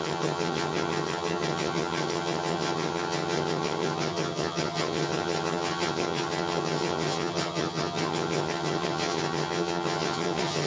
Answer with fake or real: fake